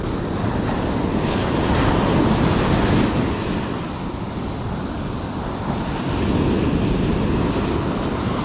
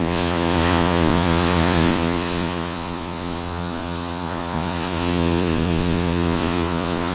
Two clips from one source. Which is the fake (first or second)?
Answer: second